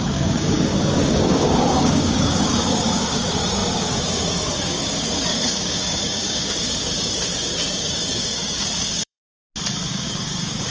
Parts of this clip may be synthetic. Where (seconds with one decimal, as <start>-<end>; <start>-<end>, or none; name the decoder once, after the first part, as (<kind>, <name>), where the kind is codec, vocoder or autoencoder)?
0.0-9.2 (codec, DAC); 9.9-10.7